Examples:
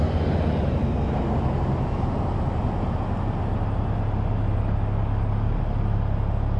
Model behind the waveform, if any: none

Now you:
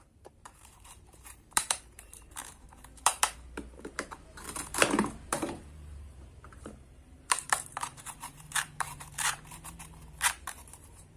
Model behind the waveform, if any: vocoder, BigVGAN v2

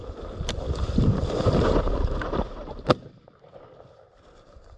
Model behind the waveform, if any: vocoder, BigVGAN v2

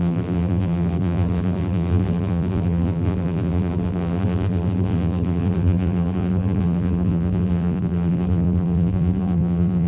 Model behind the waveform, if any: vocoder, BigVGAN v2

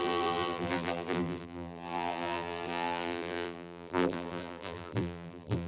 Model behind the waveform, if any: vocoder, BigVGAN v2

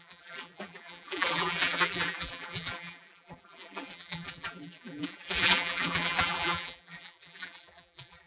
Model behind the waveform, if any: vocoder, BigVGAN v2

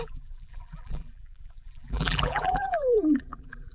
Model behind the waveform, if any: vocoder, BigVGAN v2